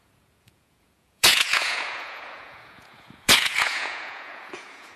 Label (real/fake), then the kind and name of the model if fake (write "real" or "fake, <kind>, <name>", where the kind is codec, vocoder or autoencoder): fake, vocoder, Vocos